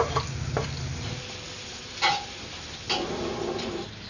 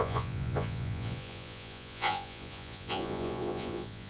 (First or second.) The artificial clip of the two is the second